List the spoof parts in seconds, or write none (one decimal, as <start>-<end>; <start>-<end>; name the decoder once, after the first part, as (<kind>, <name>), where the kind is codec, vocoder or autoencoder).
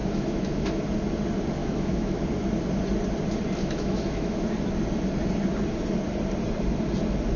0.0-0.8 (autoencoder, DAC-VAE); 1.6-2.2; 3.6-4.4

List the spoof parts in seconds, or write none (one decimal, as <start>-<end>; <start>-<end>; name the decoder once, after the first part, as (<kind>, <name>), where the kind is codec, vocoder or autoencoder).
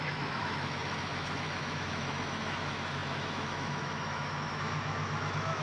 0.0-5.6 (autoencoder, DAC-VAE)